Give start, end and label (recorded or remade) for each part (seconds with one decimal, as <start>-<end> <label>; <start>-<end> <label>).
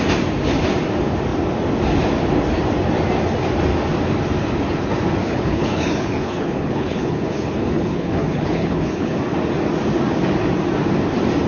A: 0.0-5.2 recorded; 5.2-9.2 remade; 9.2-11.5 recorded